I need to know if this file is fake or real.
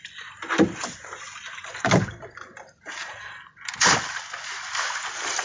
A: real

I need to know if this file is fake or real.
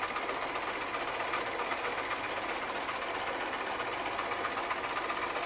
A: real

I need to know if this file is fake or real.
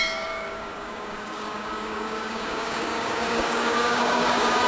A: fake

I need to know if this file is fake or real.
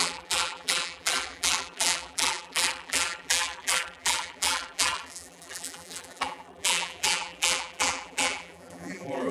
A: fake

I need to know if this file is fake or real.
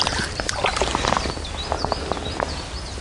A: real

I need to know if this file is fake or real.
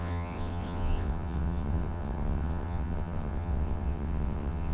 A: fake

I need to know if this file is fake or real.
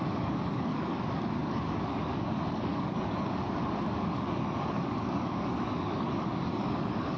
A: fake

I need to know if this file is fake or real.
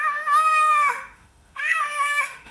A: fake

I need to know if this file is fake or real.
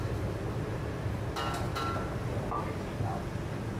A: real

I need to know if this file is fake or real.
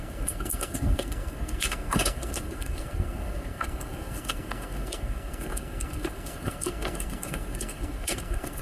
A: fake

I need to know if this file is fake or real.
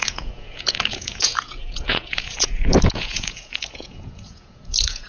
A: fake